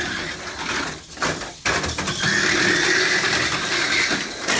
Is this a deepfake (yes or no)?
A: no